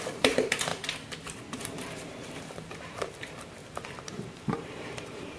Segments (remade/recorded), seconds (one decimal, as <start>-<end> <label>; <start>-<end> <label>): 0.0-0.7 remade; 0.7-1.6 recorded; 1.6-5.4 remade